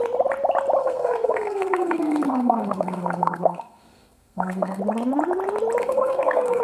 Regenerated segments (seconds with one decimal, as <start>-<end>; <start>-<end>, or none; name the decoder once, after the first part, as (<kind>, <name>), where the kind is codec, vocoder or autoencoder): 0.8-4.8 (codec, SNAC); 5.8-6.6